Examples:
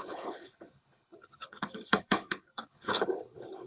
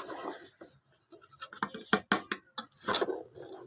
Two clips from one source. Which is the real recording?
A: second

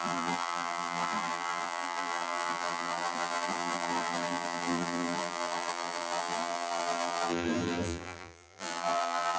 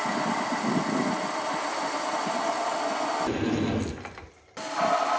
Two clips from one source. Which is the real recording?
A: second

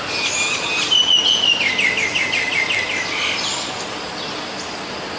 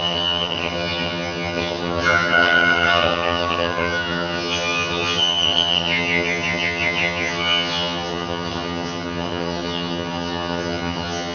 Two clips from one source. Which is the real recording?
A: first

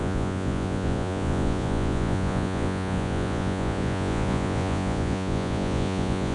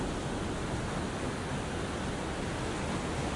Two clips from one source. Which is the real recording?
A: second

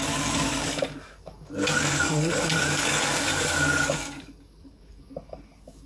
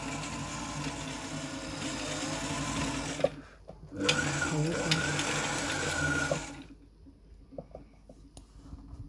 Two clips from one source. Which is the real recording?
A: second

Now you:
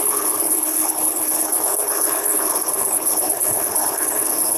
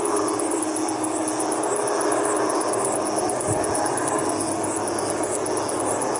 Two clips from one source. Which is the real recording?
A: second